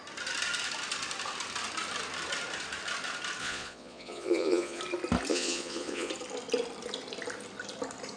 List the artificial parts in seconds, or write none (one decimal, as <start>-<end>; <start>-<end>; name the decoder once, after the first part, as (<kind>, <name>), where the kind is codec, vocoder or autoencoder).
3.4-4.8 (vocoder, Vocos); 5.3-6.1